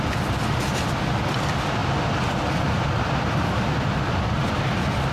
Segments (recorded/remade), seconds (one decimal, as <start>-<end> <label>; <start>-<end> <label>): 0.0-5.1 recorded